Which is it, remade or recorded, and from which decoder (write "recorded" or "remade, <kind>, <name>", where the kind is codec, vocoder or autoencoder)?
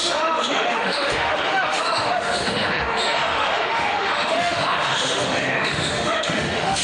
remade, autoencoder, DAC-VAE